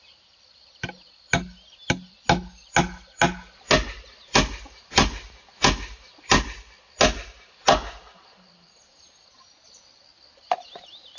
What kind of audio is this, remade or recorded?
recorded